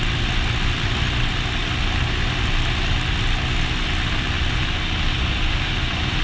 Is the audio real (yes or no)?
yes